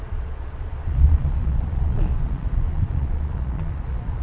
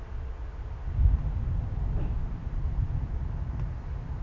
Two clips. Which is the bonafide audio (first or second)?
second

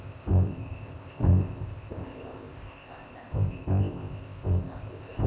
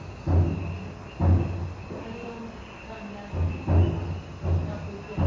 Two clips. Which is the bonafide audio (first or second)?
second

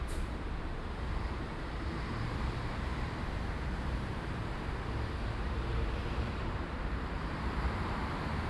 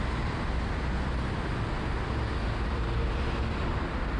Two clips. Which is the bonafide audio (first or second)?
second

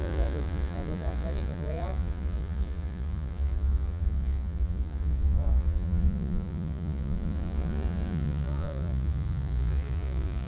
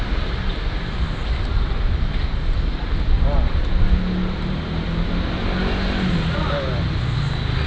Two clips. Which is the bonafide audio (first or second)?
second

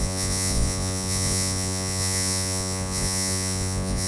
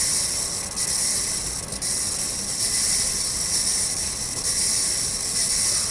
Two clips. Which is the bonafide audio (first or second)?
second